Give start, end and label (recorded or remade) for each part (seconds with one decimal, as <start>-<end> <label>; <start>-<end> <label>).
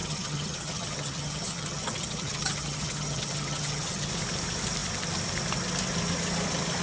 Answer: 0.0-4.1 remade; 4.1-6.8 recorded